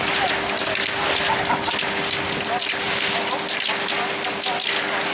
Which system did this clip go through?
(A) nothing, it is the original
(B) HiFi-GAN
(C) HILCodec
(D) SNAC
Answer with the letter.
A